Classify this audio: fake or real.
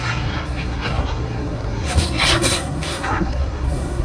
fake